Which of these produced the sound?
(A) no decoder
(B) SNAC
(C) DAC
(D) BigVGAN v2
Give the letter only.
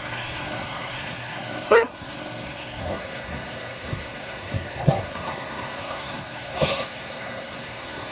B